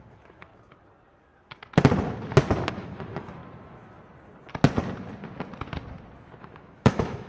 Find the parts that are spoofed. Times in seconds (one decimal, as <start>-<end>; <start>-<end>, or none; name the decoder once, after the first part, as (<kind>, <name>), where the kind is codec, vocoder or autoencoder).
0.0-0.5 (autoencoder, DAC-VAE); 2.7-3.4; 6.4-7.3